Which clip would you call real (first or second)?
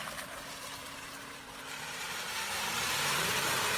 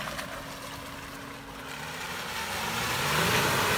second